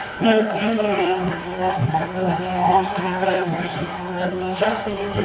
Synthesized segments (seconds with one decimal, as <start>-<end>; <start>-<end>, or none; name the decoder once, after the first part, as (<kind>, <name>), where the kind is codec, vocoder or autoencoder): 0.0-5.2 (codec, SNAC)